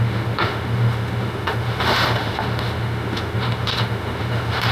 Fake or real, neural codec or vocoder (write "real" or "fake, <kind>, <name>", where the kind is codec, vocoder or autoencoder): fake, autoencoder, DAC-VAE